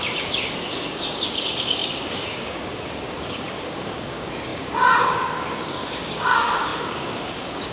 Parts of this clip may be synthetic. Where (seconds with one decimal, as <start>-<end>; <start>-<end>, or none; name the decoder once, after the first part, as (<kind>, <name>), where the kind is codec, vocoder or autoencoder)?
0.0-7.7 (codec, DAC)